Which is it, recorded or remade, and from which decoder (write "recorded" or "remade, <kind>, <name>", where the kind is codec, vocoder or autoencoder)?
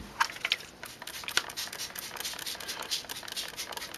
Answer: recorded